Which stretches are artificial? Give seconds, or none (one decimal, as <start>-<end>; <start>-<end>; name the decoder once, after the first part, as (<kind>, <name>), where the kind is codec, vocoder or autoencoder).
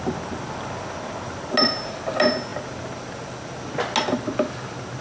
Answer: none